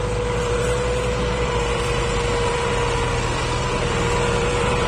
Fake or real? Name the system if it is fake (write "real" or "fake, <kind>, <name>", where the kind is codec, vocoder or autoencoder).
fake, vocoder, BigVGAN v2